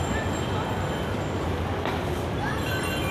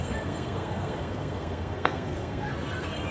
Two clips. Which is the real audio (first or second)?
first